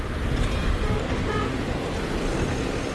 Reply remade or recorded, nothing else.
recorded